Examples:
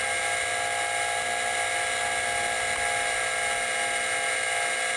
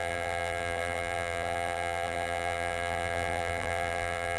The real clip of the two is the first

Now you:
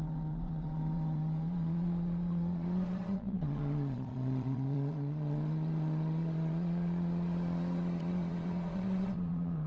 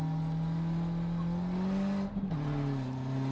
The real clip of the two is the second